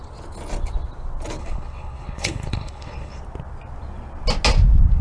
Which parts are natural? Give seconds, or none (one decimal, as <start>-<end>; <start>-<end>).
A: 0.0-1.4; 3.2-5.0